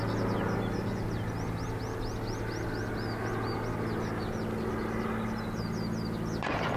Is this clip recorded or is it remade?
recorded